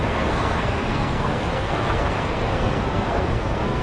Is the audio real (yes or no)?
no